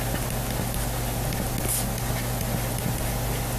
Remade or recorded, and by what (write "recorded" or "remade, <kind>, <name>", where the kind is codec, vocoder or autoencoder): recorded